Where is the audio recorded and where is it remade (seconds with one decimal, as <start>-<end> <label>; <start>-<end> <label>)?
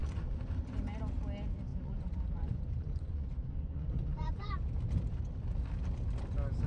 0.0-0.8 remade; 0.8-1.7 recorded; 1.7-4.5 remade; 4.5-6.7 recorded